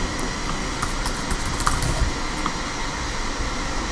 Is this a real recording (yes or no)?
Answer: yes